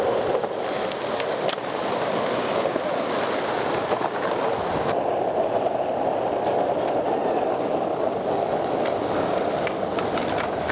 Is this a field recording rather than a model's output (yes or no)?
yes